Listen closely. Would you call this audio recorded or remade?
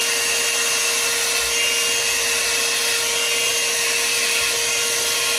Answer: recorded